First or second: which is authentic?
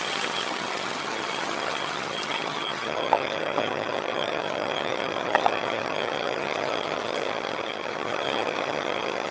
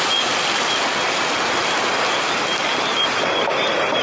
second